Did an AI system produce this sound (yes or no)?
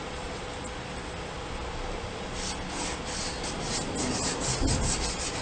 no